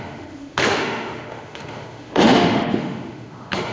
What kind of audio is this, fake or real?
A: fake